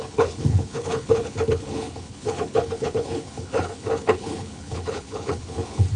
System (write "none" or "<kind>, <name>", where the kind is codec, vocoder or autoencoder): codec, HILCodec